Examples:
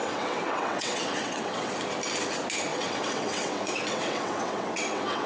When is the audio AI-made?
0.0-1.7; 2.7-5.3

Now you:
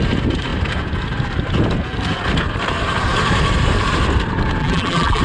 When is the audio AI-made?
4.6-5.2

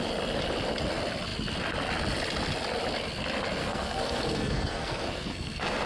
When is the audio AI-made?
3.6-5.9

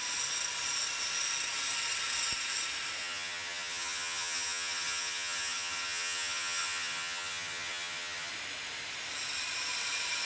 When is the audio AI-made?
3.0-8.3

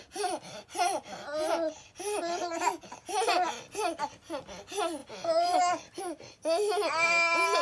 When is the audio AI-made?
none

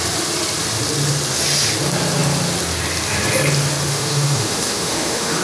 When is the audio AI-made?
3.9-5.4

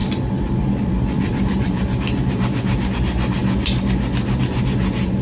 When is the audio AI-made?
0.0-2.9

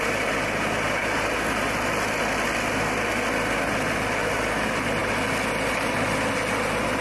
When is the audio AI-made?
none